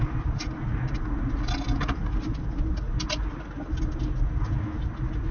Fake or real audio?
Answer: real